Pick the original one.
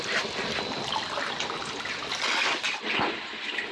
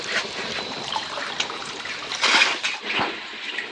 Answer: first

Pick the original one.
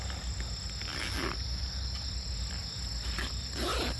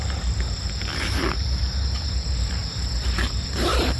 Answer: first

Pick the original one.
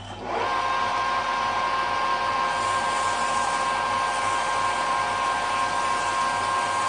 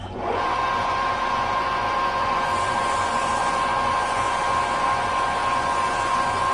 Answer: first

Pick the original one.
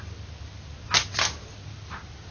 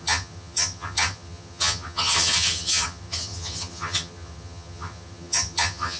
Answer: first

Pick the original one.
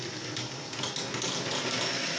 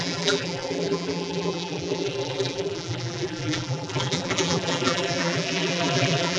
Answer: first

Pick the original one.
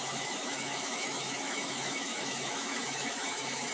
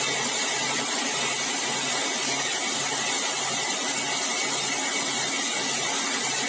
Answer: second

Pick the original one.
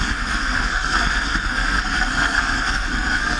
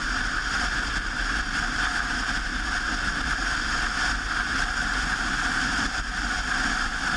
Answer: second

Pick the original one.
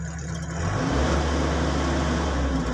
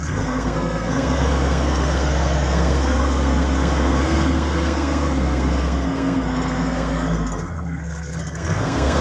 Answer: first